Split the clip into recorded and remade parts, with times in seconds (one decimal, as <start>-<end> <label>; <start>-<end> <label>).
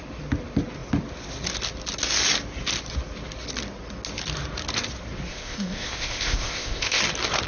0.0-5.3 recorded; 5.3-7.0 remade; 7.0-7.5 recorded